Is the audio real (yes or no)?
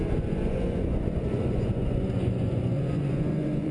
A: no